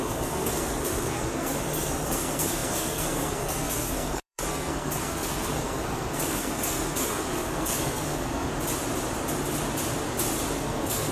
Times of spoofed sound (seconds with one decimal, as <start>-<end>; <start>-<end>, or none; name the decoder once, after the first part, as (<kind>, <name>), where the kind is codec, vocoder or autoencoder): 0.0-8.5 (codec, SNAC); 10.6-11.1

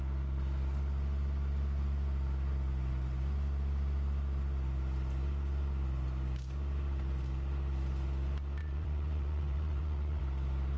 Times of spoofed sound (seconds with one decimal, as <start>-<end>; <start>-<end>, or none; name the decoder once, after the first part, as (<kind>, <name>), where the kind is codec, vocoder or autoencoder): 8.6-10.2 (vocoder, WaveNeXt)

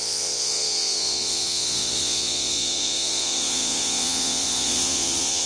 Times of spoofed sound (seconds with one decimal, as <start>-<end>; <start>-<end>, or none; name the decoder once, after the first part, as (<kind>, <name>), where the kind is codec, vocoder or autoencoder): 0.0-5.5 (vocoder, Vocos)

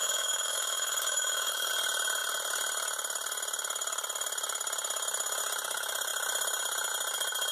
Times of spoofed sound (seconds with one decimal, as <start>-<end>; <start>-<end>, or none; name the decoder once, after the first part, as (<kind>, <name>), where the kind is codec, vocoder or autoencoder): 0.0-1.7 (autoencoder, DAC-VAE)

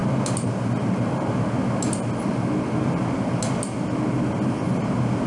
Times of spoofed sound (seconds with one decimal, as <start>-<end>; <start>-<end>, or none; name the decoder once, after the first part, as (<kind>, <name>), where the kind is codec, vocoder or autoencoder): none

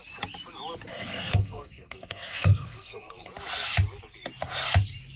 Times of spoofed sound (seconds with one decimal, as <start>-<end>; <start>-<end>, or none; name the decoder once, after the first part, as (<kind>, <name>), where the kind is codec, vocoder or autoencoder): 0.9-3.3 (codec, SNAC)

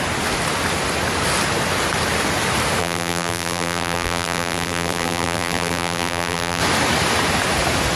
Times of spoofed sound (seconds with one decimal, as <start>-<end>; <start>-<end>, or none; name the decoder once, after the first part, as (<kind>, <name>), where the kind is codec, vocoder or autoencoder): 2.8-6.6 (vocoder, BigVGAN v2)

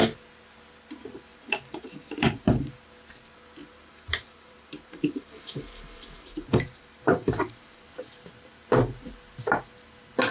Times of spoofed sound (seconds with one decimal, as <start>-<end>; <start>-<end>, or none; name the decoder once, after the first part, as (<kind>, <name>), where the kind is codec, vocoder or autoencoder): 1.3-2.8 (vocoder, BigVGAN v2); 3.6-7.8